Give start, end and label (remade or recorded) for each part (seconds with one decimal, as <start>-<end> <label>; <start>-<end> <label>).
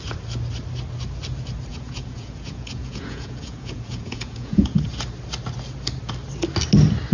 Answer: 0.0-1.7 recorded; 1.7-4.9 remade; 4.9-7.1 recorded